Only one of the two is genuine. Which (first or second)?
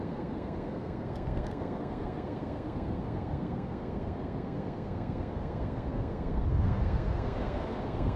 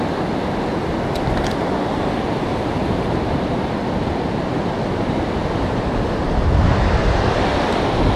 second